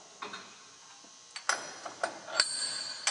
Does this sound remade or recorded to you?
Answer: recorded